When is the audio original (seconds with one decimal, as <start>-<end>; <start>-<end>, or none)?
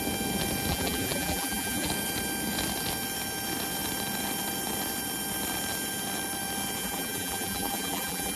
0.0-0.7; 1.9-6.8